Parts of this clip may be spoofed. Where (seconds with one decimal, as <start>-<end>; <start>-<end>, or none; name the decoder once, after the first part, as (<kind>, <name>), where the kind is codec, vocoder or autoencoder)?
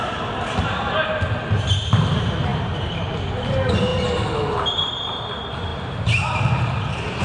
2.5-3.3 (vocoder, BigVGAN v2); 5.7-7.2